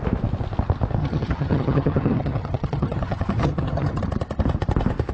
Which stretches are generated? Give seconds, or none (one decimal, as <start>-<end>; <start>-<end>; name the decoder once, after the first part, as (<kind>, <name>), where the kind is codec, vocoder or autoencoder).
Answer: 1.0-4.0 (vocoder, HiFi-GAN)